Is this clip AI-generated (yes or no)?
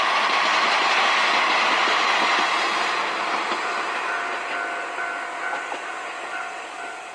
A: no